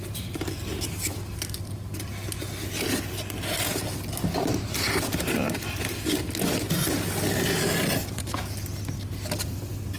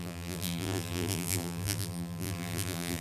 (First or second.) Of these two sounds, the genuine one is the first